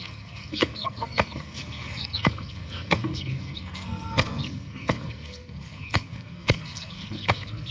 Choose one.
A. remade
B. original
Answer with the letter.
A